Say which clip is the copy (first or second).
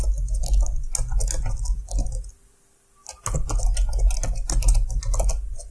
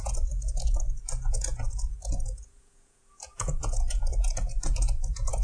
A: second